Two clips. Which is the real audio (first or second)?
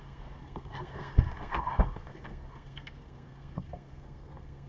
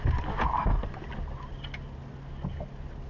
second